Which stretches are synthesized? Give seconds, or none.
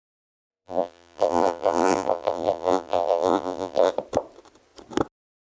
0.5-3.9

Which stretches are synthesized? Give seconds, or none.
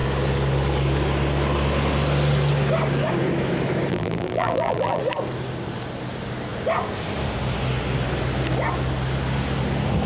3.9-5.0